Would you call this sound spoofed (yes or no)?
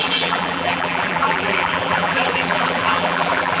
yes